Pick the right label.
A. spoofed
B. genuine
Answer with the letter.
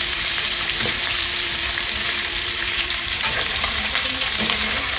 A